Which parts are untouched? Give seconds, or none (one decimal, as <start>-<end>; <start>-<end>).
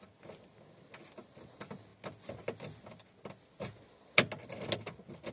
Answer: 0.0-5.3